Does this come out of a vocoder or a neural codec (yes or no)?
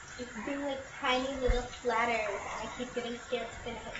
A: no